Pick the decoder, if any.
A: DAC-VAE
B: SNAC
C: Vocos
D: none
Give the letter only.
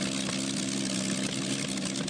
D